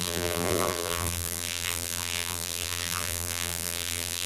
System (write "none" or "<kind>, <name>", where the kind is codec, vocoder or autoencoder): vocoder, BigVGAN v2